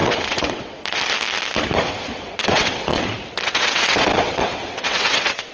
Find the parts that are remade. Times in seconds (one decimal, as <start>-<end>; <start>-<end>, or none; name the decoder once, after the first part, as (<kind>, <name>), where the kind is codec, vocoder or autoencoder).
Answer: 0.0-1.0 (vocoder, WaveNeXt); 2.1-5.5